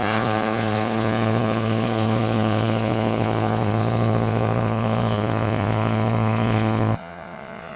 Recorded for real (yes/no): no